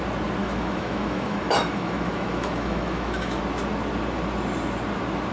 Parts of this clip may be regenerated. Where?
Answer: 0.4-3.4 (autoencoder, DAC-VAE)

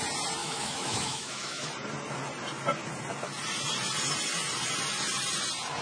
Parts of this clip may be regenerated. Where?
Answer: 0.4-1.7 (autoencoder, DAC-VAE)

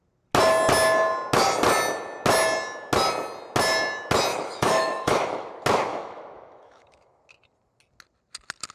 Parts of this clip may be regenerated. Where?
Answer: 4.3-5.5 (autoencoder, DAC-VAE); 5.9-7.2

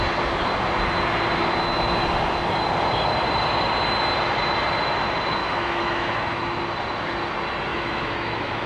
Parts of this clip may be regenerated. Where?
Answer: 5.4-6.4 (autoencoder, DAC-VAE); 7.7-8.7

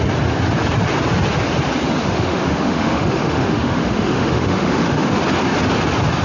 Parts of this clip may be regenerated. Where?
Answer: 2.0-5.2 (autoencoder, DAC-VAE)